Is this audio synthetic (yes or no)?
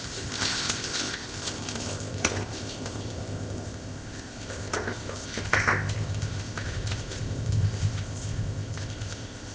yes